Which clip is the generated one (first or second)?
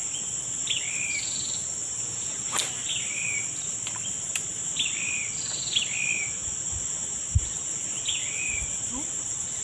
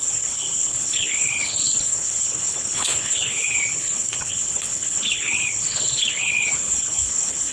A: second